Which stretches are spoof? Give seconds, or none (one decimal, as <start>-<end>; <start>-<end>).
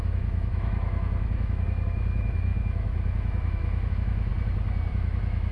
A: 0.0-4.3; 4.9-5.5